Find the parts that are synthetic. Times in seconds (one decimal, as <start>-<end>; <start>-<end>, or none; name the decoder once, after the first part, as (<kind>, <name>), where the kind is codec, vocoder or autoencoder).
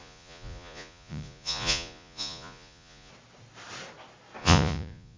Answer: 0.0-3.1 (vocoder, Vocos); 4.4-5.2